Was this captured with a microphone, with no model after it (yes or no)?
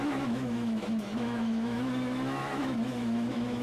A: no